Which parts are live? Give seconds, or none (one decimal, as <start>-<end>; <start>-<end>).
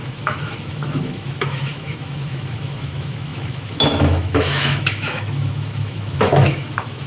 none